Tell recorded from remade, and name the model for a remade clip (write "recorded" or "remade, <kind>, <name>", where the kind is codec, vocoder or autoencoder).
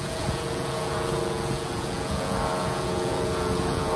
remade, vocoder, Vocos